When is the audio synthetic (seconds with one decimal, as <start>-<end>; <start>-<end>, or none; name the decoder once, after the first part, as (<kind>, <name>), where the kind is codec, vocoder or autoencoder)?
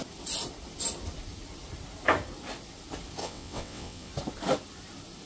3.2-4.1 (vocoder, WaveNeXt)